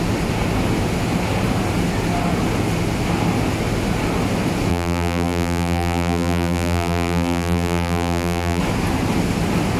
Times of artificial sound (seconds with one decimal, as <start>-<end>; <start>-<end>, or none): 4.7-8.6